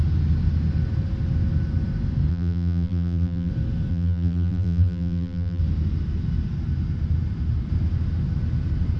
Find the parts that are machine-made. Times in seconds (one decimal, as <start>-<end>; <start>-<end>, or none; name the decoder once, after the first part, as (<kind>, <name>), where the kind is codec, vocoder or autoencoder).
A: 2.3-3.5 (vocoder, BigVGAN v2); 3.9-5.6